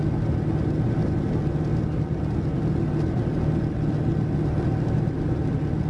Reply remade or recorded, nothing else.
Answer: recorded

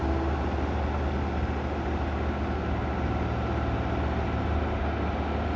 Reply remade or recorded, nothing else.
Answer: recorded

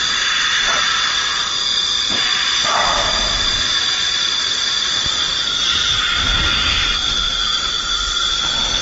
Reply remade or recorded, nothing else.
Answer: recorded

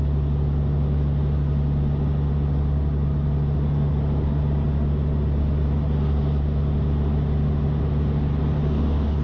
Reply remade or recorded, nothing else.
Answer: recorded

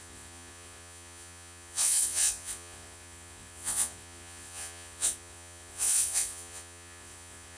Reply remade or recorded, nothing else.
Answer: remade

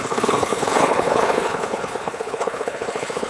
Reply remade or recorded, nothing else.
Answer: remade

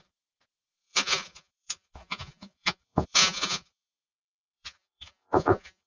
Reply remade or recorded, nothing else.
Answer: remade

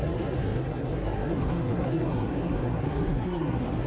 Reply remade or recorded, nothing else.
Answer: remade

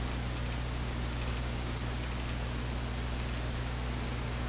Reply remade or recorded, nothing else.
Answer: recorded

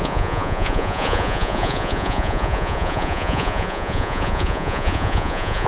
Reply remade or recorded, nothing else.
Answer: remade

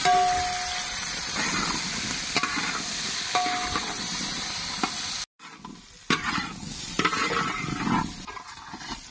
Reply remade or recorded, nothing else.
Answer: recorded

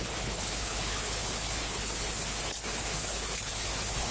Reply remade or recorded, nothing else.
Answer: remade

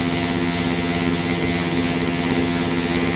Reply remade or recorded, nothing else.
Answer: remade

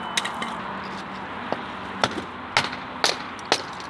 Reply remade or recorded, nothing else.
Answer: recorded